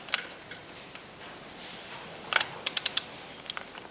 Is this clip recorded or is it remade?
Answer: recorded